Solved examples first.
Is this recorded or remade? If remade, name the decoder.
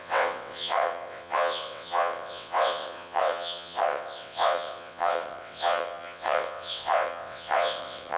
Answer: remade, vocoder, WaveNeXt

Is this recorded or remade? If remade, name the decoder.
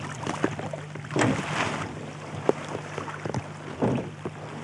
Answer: recorded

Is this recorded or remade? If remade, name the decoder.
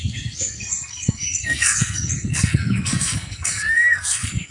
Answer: remade, codec, SNAC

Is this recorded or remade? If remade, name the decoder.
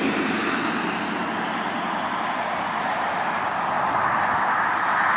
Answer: recorded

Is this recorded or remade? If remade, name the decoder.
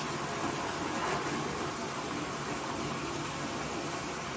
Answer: recorded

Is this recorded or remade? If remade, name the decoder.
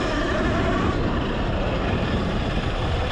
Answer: remade, vocoder, BigVGAN v2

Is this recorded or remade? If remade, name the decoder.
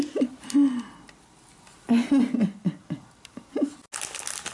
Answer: recorded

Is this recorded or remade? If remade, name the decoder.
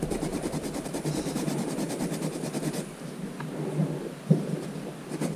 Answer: recorded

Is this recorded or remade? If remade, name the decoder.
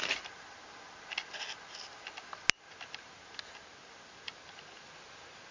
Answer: recorded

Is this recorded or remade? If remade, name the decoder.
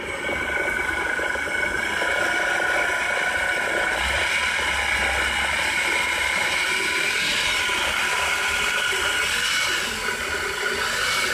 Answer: recorded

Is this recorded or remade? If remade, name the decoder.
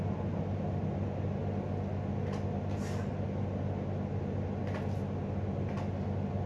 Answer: recorded